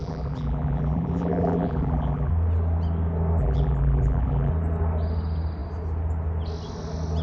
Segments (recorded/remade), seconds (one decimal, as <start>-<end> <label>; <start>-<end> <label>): 0.0-2.3 remade; 2.3-3.4 recorded; 3.4-4.5 remade; 4.5-7.2 recorded